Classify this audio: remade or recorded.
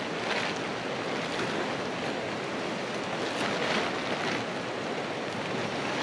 recorded